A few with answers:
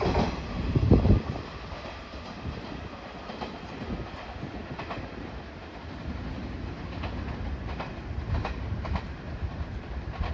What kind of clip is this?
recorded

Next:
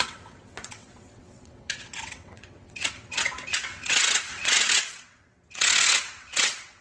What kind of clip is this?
remade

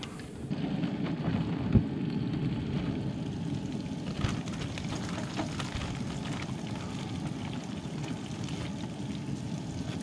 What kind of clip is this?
recorded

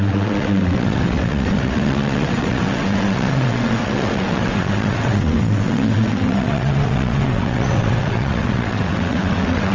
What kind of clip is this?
remade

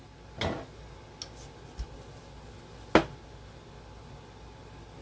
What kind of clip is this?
recorded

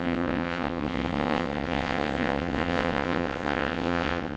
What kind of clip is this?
remade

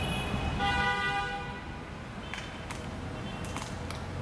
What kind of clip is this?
recorded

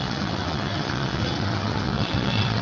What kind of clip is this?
remade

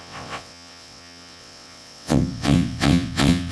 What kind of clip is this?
remade